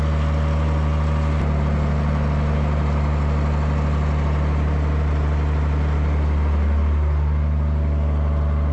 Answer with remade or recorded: recorded